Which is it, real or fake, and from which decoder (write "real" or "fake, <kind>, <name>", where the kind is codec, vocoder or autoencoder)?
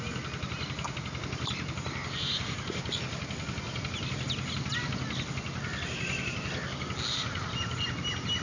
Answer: real